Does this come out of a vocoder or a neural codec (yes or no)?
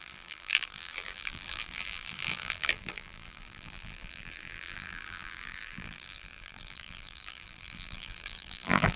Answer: yes